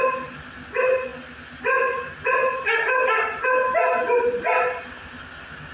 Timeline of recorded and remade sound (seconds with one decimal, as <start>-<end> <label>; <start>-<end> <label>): 0.0-5.7 recorded